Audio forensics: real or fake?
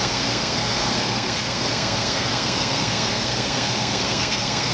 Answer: fake